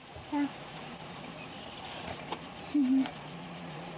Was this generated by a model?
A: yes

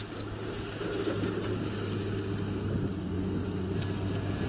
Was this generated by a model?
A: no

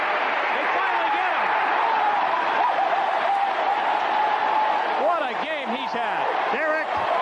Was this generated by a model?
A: no